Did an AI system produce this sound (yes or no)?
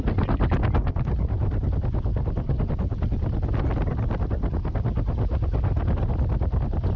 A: no